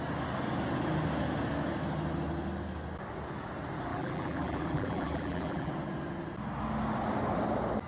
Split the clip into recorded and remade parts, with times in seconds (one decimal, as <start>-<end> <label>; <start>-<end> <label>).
0.0-3.9 recorded; 3.9-5.7 remade; 5.7-7.9 recorded